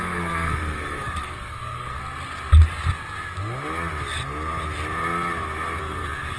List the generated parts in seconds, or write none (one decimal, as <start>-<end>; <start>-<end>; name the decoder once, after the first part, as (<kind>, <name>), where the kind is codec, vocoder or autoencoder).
0.0-2.0 (codec, SNAC); 5.8-6.4